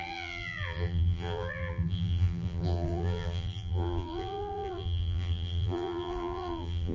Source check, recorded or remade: remade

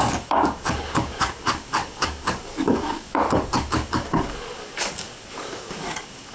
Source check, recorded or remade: remade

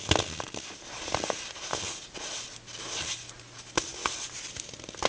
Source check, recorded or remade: recorded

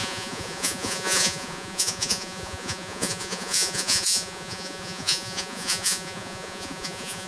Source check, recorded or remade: remade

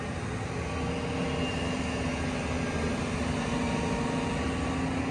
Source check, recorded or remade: recorded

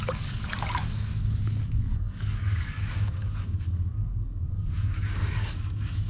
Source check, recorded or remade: remade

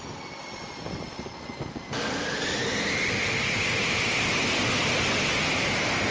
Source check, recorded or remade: remade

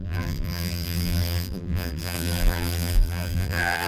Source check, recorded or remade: remade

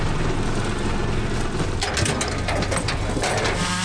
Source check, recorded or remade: recorded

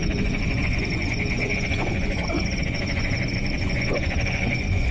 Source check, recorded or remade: remade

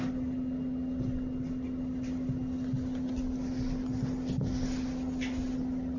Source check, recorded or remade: recorded